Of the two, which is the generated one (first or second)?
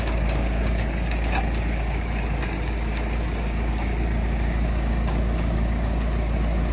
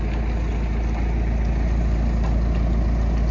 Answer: first